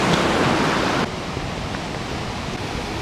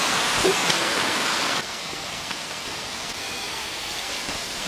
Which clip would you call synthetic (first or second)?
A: second